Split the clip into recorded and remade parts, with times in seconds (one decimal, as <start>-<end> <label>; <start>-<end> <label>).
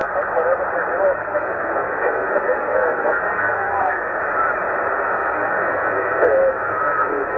0.0-1.1 recorded; 1.1-4.2 remade; 4.2-4.9 recorded; 4.9-7.4 remade